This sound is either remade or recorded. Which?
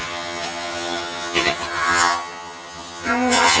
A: remade